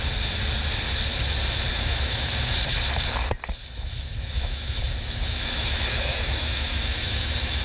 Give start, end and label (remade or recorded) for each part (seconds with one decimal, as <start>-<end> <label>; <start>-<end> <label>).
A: 0.0-1.7 recorded; 1.7-2.3 remade; 2.3-3.6 recorded; 3.6-7.6 remade